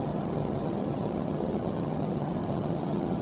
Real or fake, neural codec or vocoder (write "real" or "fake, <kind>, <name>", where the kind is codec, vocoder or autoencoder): fake, vocoder, HiFi-GAN